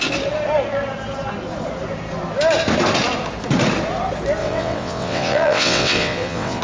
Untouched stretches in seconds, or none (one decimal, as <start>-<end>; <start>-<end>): 0.0-4.4